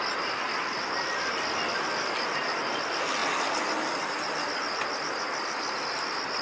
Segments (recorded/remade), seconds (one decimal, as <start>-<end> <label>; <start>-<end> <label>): 0.0-6.4 recorded